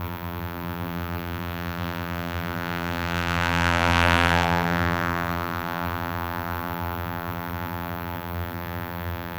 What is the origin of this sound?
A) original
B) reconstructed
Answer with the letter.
B